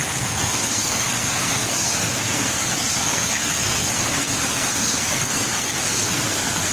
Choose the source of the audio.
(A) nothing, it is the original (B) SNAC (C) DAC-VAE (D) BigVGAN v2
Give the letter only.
B